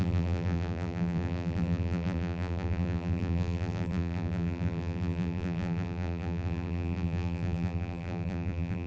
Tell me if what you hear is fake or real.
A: fake